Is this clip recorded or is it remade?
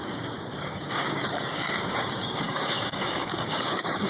remade